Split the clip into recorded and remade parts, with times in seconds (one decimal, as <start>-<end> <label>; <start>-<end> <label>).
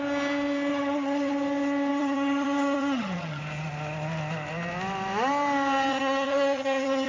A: 0.0-0.7 recorded; 0.7-1.3 remade; 1.3-1.9 recorded; 1.9-3.4 remade; 3.4-5.9 recorded; 5.9-7.1 remade